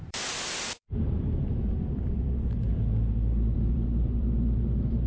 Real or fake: fake